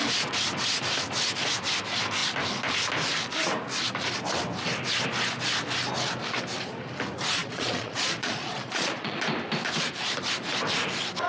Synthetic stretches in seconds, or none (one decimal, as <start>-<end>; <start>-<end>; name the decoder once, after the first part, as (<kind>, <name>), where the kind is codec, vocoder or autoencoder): 7.4-9.2 (vocoder, Vocos)